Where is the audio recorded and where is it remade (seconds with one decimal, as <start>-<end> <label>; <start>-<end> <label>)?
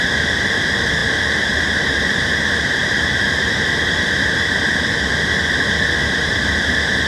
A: 0.0-7.1 remade